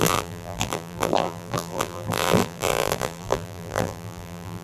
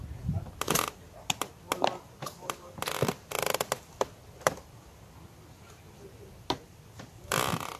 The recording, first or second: second